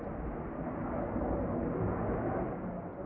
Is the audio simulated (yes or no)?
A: no